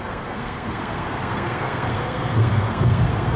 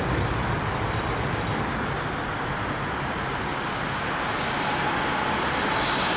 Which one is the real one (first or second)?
second